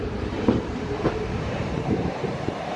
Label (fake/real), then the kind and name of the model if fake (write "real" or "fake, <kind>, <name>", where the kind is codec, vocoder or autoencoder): fake, vocoder, BigVGAN v2